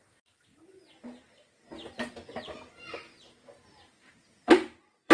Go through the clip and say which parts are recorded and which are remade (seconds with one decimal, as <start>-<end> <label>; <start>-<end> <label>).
0.0-1.7 remade; 1.7-4.4 recorded; 4.4-5.1 remade